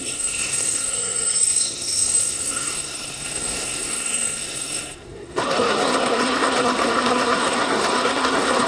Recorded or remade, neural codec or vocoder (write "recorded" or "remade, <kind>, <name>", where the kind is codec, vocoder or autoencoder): remade, codec, SNAC